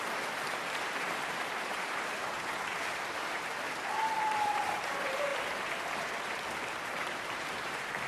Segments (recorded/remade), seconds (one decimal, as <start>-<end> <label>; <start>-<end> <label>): 0.0-8.1 remade